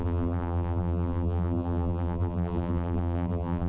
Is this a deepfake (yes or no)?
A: yes